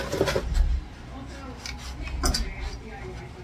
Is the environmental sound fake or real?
real